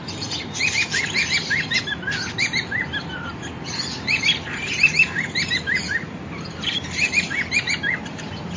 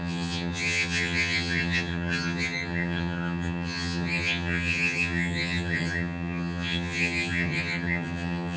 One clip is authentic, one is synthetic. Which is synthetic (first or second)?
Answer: second